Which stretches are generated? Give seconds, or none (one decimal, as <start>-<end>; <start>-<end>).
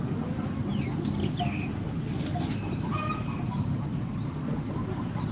1.2-4.4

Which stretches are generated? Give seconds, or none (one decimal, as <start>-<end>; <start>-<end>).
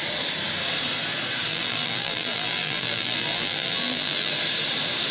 1.5-4.3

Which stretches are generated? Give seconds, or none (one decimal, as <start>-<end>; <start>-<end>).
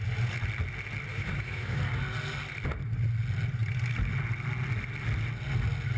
1.1-1.8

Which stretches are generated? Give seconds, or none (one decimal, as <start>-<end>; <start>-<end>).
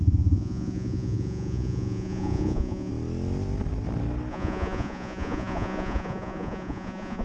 0.0-2.9; 4.3-7.2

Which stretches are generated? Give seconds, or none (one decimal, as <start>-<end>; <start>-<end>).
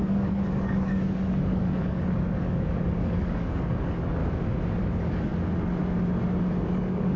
0.0-4.2; 4.8-5.3; 6.5-7.2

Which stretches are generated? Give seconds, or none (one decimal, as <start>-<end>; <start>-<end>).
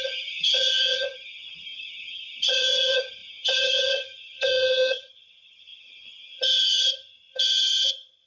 0.0-8.3